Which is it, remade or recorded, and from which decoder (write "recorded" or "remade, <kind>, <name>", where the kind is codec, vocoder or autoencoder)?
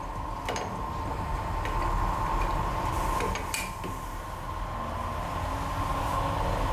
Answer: recorded